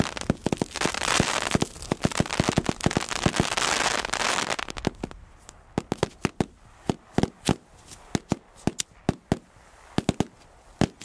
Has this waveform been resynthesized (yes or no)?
no